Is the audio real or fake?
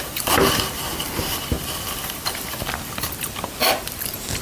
fake